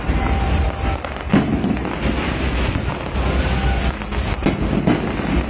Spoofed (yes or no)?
no